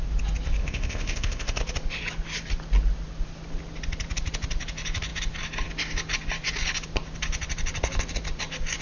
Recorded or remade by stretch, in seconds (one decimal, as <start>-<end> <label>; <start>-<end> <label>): 0.0-0.6 recorded; 0.6-1.6 remade; 1.6-8.8 recorded